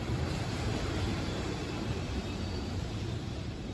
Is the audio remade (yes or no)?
yes